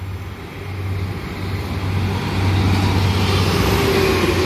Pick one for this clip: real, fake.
real